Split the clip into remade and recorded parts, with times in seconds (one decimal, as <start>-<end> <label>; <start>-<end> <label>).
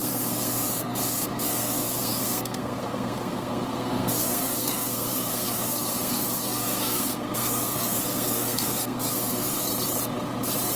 0.0-9.7 remade; 9.7-10.8 recorded